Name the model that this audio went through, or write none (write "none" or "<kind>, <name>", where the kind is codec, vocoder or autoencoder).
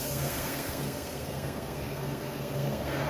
codec, SNAC